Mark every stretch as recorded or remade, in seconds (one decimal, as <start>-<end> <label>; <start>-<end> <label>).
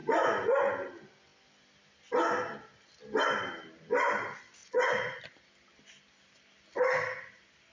0.0-0.6 remade; 0.6-4.6 recorded; 4.6-5.2 remade; 5.2-7.7 recorded